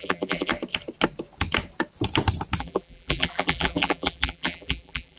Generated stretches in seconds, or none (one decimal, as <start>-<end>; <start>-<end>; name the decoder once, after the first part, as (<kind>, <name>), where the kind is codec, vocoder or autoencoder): 0.0-0.5 (vocoder, BigVGAN v2); 2.6-5.2